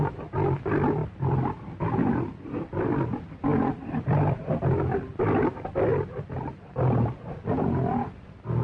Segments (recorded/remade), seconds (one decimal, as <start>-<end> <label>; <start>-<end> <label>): 0.0-1.0 recorded; 1.0-1.5 remade; 1.5-3.5 recorded; 3.5-4.6 remade; 4.6-5.9 recorded; 5.9-6.7 remade; 6.7-8.6 recorded